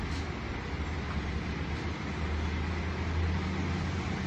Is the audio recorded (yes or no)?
yes